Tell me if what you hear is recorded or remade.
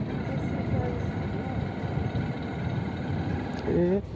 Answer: recorded